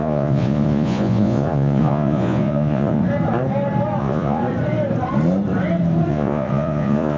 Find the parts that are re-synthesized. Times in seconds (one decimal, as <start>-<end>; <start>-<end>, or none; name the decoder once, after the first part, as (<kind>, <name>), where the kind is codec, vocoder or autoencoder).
0.0-3.0 (vocoder, Vocos); 4.0-4.4; 6.1-7.2